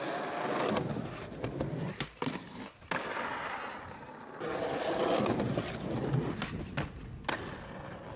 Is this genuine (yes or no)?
yes